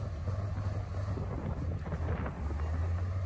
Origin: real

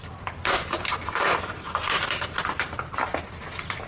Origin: fake